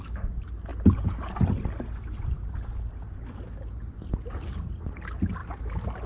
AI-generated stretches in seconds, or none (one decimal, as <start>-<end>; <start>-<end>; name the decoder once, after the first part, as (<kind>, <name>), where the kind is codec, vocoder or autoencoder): none